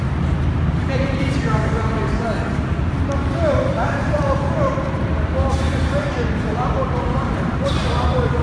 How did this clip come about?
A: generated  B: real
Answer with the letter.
A